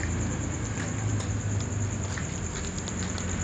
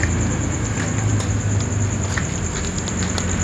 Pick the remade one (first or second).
first